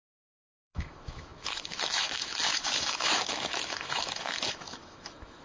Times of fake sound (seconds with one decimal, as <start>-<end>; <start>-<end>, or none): 0.0-5.4